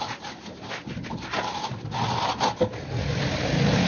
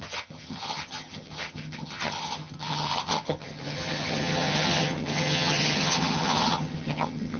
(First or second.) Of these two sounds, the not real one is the second